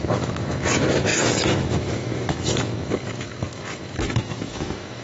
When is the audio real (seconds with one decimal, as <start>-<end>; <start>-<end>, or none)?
none